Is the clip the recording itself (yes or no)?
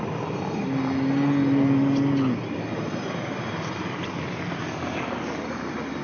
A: yes